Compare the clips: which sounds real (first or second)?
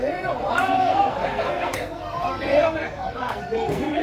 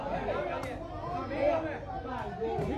second